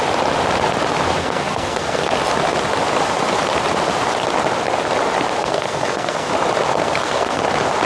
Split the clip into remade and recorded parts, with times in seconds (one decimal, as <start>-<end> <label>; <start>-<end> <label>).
0.0-1.2 recorded; 1.2-2.1 remade; 2.1-5.4 recorded; 5.4-6.3 remade; 6.3-6.7 recorded; 6.7-7.4 remade; 7.4-7.9 recorded